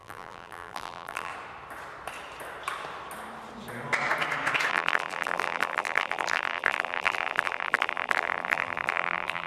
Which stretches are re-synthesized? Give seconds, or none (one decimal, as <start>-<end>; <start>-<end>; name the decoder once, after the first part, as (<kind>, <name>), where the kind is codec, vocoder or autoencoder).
0.0-1.3 (vocoder, BigVGAN v2); 4.7-9.5

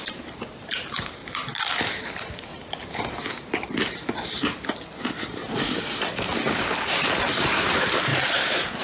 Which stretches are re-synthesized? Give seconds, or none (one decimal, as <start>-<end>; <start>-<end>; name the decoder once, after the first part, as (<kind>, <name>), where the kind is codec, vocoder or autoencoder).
0.0-1.2 (vocoder, BigVGAN v2); 1.7-2.5; 3.5-5.4; 6.9-8.8

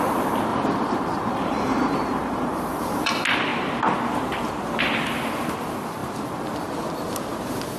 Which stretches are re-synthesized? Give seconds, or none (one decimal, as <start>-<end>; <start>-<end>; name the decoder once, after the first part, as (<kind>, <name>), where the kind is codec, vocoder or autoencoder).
0.5-3.1 (vocoder, BigVGAN v2)

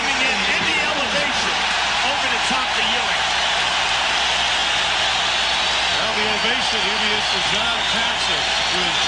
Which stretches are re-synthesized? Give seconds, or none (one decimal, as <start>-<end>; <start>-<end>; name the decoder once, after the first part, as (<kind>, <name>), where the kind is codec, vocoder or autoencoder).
0.7-3.1 (vocoder, BigVGAN v2)

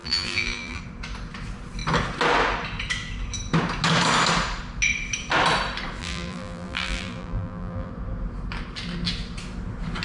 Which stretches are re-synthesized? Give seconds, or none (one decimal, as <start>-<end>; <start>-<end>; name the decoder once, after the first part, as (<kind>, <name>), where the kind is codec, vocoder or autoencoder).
0.0-0.8 (vocoder, BigVGAN v2); 6.0-7.9

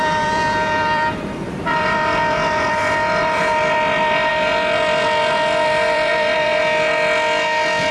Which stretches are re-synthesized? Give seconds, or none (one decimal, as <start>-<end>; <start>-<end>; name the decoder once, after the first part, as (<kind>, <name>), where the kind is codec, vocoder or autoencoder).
0.0-6.6 (vocoder, BigVGAN v2)

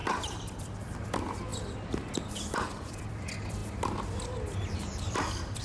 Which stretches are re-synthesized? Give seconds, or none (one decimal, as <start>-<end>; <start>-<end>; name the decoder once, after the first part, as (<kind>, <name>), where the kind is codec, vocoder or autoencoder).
0.0-3.6 (vocoder, BigVGAN v2); 4.7-5.6

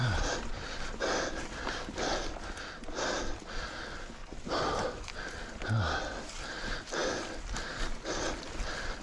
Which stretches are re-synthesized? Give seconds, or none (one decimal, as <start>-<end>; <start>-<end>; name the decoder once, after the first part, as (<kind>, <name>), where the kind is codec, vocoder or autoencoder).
4.2-4.8 (vocoder, BigVGAN v2)